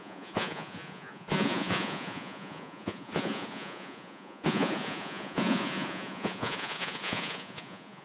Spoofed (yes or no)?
yes